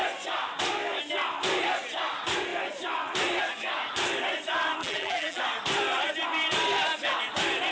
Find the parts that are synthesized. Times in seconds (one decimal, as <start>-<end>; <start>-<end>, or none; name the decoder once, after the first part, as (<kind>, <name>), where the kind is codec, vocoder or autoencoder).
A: 4.8-5.4 (vocoder, BigVGAN v2)